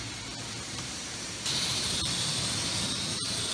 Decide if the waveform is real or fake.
fake